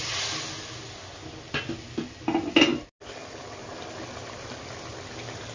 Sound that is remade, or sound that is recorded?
recorded